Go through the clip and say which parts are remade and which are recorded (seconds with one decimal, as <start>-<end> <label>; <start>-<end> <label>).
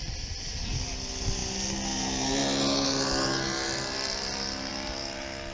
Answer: 0.0-5.5 recorded